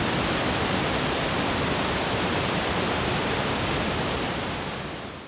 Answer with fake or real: real